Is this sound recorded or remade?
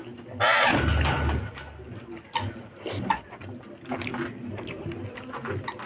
recorded